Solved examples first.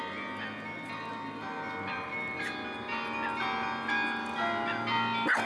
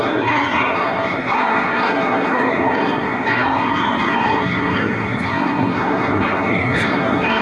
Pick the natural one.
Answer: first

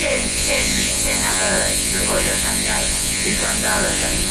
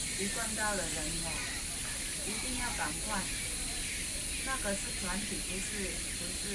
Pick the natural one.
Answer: second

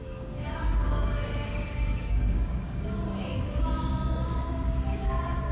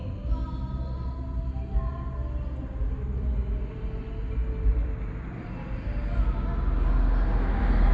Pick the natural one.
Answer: second